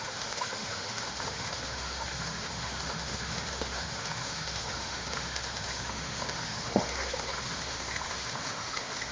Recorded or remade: remade